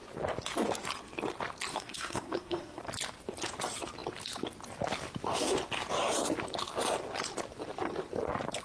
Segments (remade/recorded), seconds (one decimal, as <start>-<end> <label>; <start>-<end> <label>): 0.0-1.7 recorded; 1.7-2.8 remade; 2.8-8.6 recorded